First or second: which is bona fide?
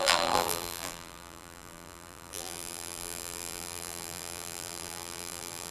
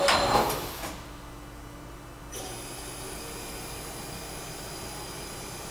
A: second